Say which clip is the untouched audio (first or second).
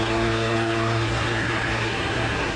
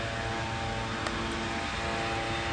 second